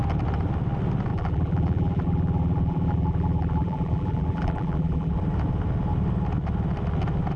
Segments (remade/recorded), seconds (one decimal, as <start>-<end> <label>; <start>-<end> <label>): 0.0-1.1 recorded; 1.1-5.2 remade; 5.2-7.4 recorded